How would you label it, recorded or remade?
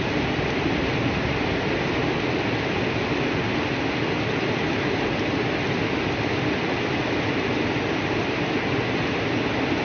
recorded